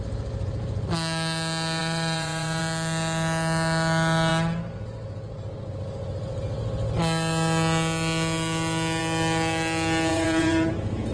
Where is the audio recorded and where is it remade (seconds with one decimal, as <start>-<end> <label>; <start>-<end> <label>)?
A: 0.0-1.8 recorded; 1.8-2.6 remade; 2.6-10.1 recorded; 10.1-10.7 remade; 10.7-11.1 recorded